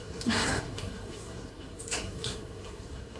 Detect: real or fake fake